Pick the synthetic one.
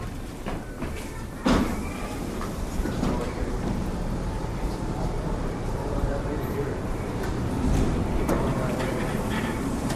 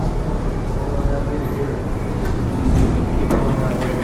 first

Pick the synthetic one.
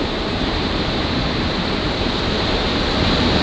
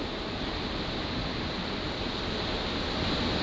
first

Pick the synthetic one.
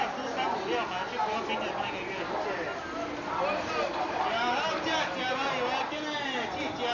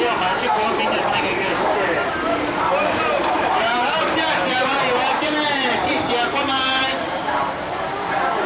second